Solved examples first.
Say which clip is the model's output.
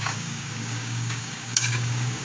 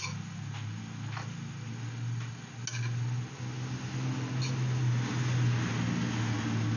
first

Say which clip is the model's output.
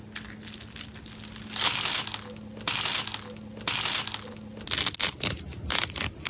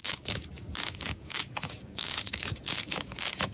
second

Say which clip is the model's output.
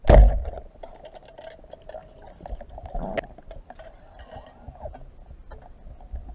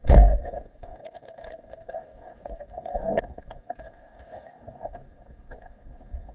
second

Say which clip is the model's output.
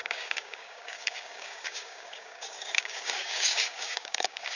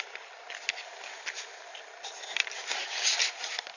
first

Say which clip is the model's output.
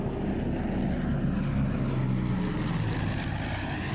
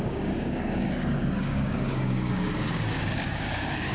second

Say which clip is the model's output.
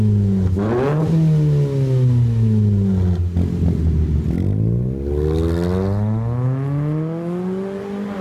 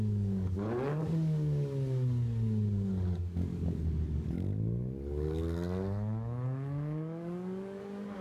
second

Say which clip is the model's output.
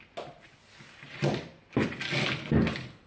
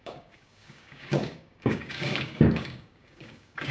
second